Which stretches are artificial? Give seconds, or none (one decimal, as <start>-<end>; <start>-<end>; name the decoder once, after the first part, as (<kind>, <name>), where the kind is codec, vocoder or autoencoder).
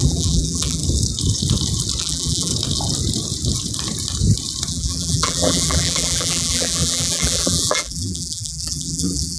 0.0-0.8 (vocoder, BigVGAN v2); 2.0-2.5; 4.7-9.4